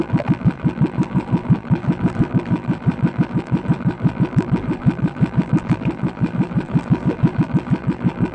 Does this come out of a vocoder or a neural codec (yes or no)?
yes